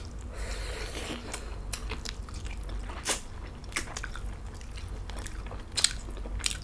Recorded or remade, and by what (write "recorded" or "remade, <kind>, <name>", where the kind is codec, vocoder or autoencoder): recorded